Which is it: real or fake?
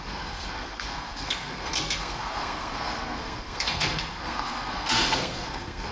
fake